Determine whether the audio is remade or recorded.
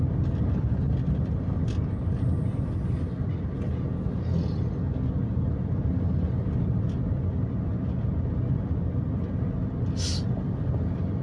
recorded